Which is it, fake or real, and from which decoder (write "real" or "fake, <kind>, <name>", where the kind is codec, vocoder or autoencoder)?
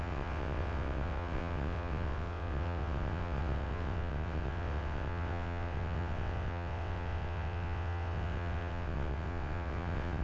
fake, vocoder, WaveNeXt